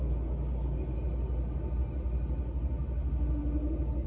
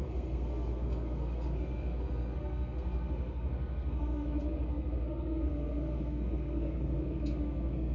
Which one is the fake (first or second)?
second